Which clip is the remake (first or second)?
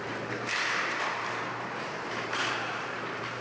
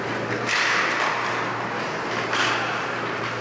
first